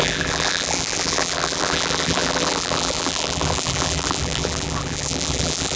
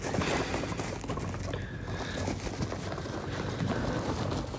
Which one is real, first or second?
second